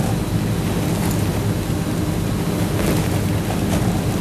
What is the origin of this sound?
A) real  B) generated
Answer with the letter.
A